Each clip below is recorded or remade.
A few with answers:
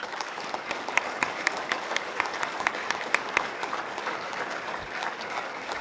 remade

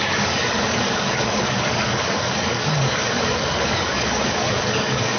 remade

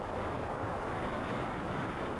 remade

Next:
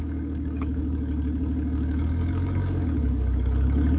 remade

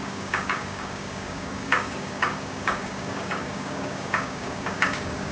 remade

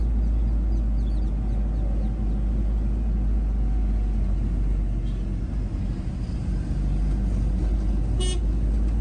recorded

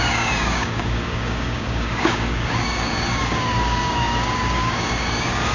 remade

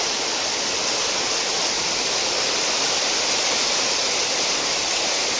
recorded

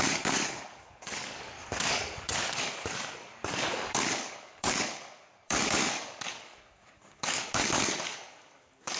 remade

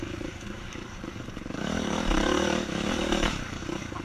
remade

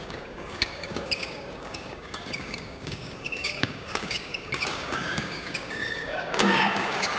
remade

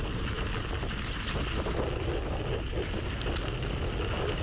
recorded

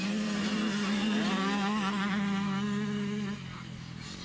recorded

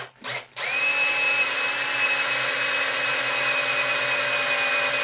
recorded